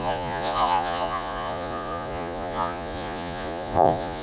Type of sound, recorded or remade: remade